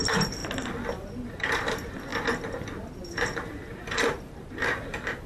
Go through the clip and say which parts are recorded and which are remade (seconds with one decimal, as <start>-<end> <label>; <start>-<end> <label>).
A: 0.0-0.4 remade; 0.4-0.9 recorded; 0.9-2.1 remade; 2.1-2.9 recorded; 2.9-5.3 remade